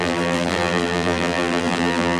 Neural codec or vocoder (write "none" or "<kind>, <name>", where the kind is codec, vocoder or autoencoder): vocoder, BigVGAN v2